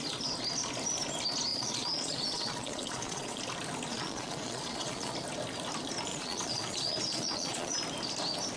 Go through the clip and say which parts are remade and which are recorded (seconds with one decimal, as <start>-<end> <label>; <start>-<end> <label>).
0.0-1.5 recorded; 1.5-3.4 remade; 3.4-3.9 recorded; 3.9-5.1 remade; 5.1-6.1 recorded; 6.1-7.8 remade; 7.8-8.6 recorded